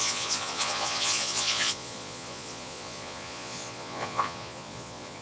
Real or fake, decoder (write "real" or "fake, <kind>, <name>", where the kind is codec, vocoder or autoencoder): fake, vocoder, Vocos